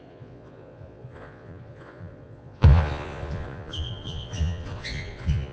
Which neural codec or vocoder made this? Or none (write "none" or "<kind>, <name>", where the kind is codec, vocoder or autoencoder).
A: vocoder, Vocos